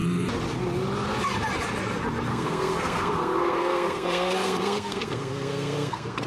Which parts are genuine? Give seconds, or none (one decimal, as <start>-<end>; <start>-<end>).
0.0-2.3